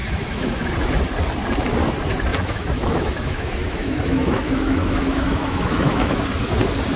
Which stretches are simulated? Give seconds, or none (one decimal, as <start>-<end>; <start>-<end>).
0.0-0.7; 2.3-6.2